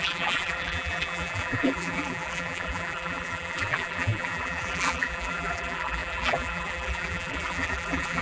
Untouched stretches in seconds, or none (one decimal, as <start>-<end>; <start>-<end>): none